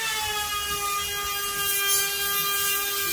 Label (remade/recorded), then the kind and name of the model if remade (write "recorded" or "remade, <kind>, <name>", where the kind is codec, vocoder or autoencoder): recorded